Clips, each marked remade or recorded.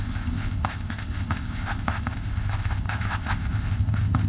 remade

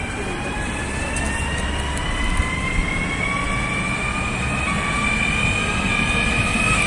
recorded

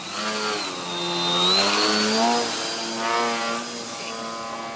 recorded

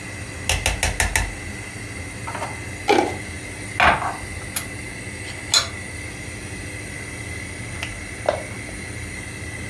recorded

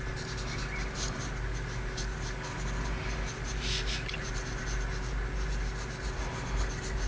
recorded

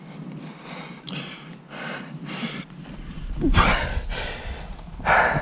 recorded